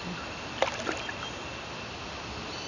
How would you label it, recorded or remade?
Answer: recorded